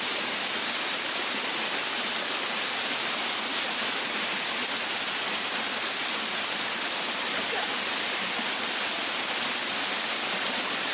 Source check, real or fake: fake